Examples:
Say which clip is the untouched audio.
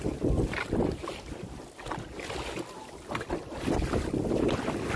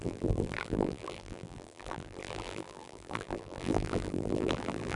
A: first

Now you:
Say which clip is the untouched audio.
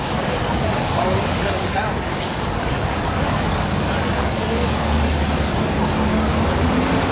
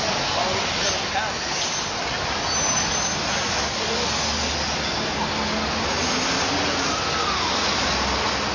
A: second